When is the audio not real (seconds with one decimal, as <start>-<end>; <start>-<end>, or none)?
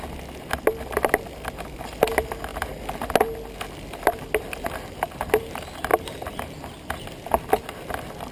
none